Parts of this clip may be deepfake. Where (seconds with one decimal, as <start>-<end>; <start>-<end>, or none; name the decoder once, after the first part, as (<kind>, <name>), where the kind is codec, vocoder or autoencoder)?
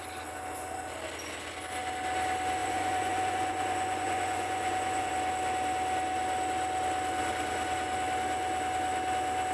2.6-5.1 (vocoder, Vocos)